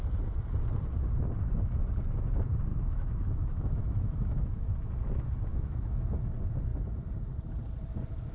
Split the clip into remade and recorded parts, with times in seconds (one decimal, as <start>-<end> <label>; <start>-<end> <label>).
0.0-2.7 recorded; 2.7-4.6 remade; 4.6-5.5 recorded; 5.5-6.1 remade; 6.1-8.3 recorded